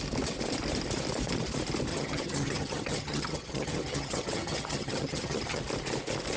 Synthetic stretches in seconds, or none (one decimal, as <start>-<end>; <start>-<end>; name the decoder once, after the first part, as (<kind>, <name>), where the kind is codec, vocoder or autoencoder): 1.9-5.6 (vocoder, HiFi-GAN)